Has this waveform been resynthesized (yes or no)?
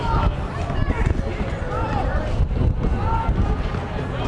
no